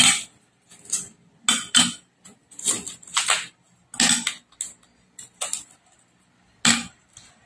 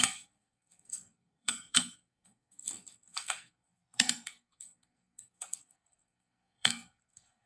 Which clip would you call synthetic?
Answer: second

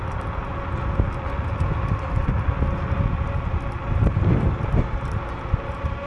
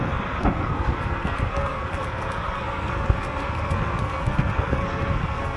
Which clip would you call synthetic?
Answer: second